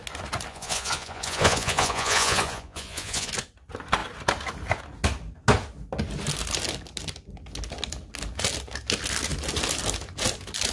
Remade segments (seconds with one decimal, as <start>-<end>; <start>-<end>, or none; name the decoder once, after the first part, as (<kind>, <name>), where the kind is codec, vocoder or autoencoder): 0.5-3.3 (vocoder, Vocos)